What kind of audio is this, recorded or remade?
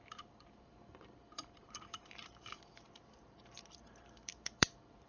remade